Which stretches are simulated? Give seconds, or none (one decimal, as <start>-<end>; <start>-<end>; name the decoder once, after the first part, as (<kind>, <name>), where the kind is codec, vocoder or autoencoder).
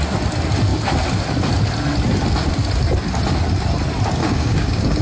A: 4.2-5.0 (codec, DAC)